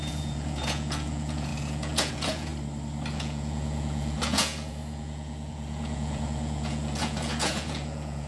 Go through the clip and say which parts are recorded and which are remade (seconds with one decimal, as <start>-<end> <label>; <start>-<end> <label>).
0.0-2.5 remade; 2.5-3.1 recorded; 3.1-8.3 remade